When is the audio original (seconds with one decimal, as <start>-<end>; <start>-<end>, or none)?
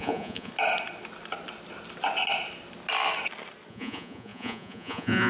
0.5-3.7